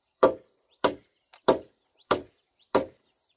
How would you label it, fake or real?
fake